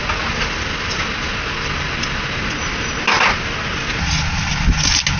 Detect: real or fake real